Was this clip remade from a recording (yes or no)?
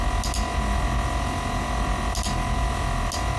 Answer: no